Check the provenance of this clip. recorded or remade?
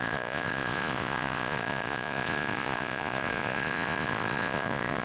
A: remade